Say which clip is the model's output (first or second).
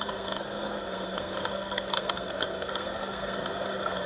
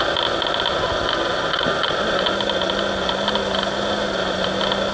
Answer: first